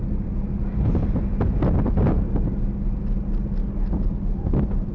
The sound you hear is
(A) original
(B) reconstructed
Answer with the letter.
A